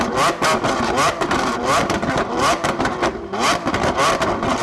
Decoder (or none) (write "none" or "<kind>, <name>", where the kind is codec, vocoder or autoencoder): none